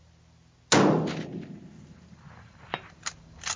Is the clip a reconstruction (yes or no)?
no